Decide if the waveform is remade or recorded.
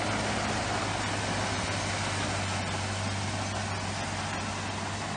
recorded